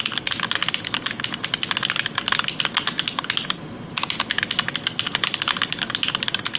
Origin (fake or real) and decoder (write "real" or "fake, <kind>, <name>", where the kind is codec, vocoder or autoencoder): real